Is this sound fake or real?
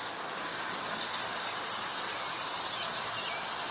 fake